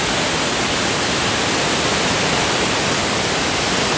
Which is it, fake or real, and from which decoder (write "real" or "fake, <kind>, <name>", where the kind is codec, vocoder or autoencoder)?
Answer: real